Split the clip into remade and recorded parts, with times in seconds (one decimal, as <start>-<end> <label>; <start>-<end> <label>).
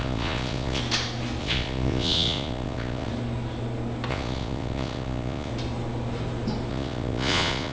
0.0-0.8 remade; 0.8-1.4 recorded; 1.4-3.1 remade; 3.1-4.1 recorded; 4.1-5.5 remade; 5.5-6.7 recorded; 6.7-7.7 remade